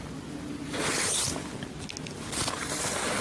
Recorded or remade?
recorded